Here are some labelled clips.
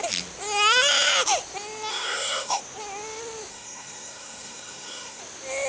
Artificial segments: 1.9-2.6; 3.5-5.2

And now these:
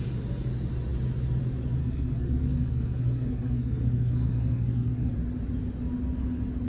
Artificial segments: 1.8-5.1

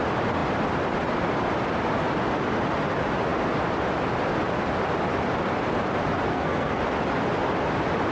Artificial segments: 6.3-6.8

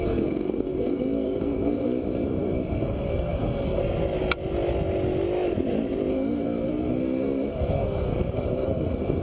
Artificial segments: 0.0-3.8; 6.1-9.2

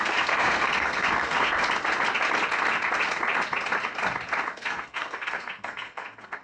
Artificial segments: 0.0-1.5; 4.5-6.4

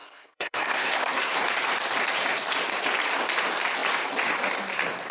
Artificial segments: 0.0-1.3